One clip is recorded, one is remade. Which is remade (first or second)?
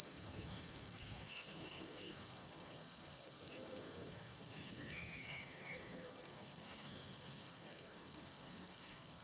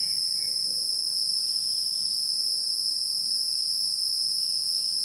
first